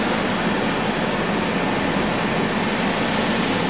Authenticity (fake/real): real